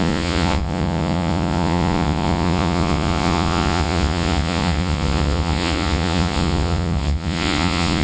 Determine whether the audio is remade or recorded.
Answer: remade